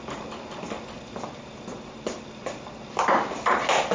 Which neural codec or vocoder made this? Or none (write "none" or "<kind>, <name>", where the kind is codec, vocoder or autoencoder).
none